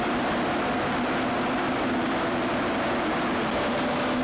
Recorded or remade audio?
recorded